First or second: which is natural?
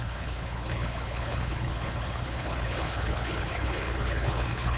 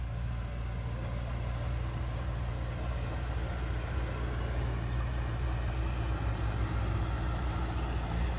second